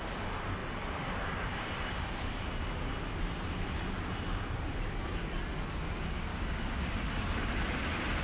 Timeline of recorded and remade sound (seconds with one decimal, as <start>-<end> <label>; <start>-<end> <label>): 0.0-6.3 recorded; 6.3-7.5 remade; 7.5-8.2 recorded